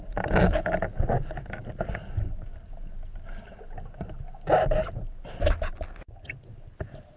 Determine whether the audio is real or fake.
real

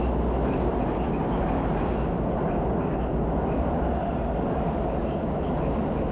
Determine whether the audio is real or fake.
real